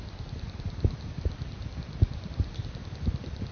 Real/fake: real